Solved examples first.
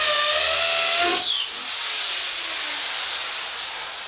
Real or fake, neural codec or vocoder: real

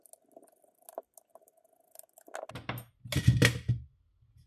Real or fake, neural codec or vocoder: real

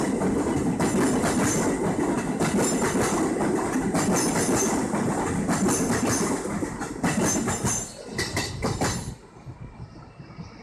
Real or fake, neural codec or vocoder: real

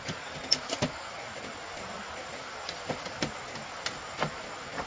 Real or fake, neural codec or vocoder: real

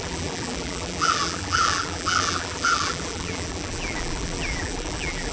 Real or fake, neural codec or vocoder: fake, vocoder, BigVGAN v2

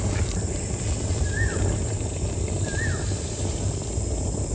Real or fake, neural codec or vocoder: fake, vocoder, BigVGAN v2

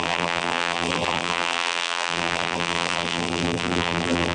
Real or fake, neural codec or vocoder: fake, vocoder, BigVGAN v2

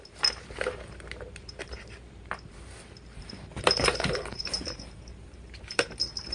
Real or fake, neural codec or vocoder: fake, vocoder, BigVGAN v2